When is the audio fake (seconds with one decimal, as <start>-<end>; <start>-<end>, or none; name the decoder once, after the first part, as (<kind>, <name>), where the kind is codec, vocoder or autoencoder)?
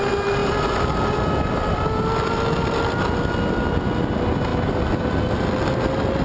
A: none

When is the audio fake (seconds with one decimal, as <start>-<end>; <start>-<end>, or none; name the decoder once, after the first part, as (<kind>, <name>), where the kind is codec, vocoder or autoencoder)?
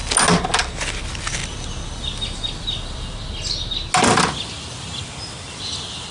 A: none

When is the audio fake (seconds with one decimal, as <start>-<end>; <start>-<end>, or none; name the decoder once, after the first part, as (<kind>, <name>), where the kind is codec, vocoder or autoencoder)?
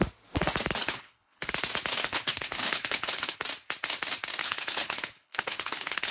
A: 0.8-1.5 (codec, HILCodec); 2.0-3.4; 4.4-6.1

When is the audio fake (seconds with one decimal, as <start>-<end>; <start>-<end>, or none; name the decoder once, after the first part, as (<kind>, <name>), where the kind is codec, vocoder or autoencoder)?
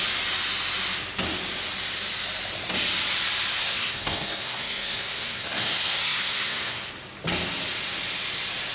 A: 3.6-6.9 (codec, SNAC)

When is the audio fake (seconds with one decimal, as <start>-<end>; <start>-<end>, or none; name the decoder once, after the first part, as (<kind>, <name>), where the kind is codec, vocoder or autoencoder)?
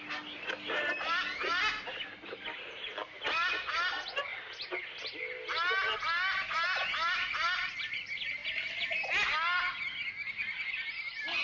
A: none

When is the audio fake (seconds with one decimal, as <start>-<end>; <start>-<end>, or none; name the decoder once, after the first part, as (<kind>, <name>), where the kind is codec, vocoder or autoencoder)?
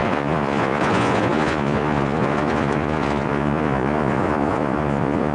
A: 0.0-5.3 (vocoder, Vocos)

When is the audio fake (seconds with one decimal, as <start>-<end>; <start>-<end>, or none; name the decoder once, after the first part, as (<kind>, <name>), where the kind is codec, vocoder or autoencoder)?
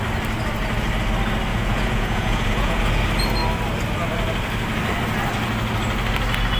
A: 1.5-2.9 (vocoder, Vocos)